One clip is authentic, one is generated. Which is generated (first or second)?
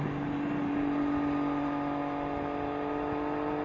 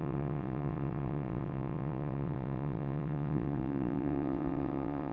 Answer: second